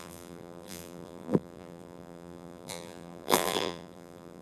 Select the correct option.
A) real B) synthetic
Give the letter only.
B